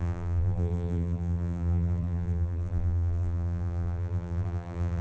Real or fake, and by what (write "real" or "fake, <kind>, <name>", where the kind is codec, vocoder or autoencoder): fake, vocoder, BigVGAN v2